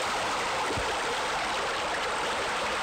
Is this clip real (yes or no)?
yes